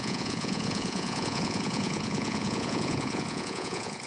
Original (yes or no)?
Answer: no